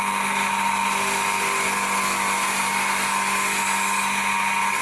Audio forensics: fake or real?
real